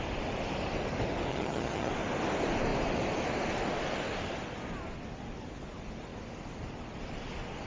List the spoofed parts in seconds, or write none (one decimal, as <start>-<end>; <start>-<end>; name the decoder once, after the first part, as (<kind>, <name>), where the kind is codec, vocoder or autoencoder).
1.3-1.9 (vocoder, HiFi-GAN)